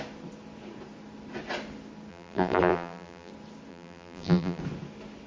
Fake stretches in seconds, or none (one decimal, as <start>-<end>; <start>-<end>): 2.1-3.3; 3.7-4.6